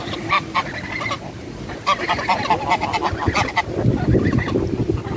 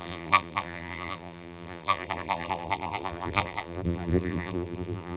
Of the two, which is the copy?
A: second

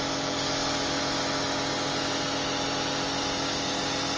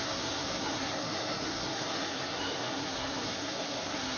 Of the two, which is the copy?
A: second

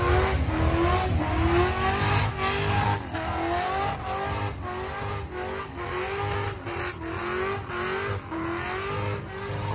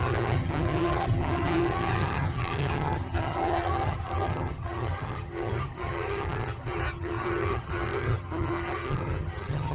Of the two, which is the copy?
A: second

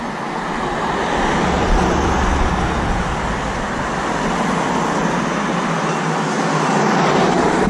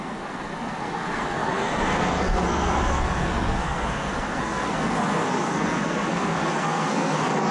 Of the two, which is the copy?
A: second